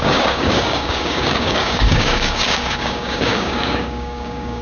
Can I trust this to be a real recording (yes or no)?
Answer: no